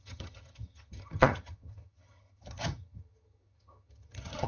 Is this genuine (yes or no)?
no